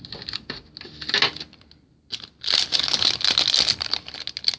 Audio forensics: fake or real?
real